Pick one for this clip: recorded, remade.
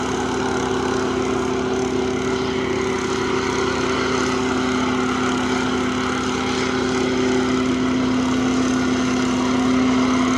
recorded